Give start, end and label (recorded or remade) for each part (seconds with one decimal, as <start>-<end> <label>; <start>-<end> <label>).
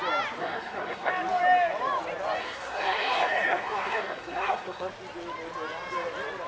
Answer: 0.0-0.4 recorded; 0.4-1.1 remade; 1.1-2.4 recorded; 2.4-4.9 remade; 4.9-6.5 recorded